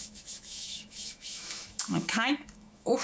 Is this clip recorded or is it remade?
remade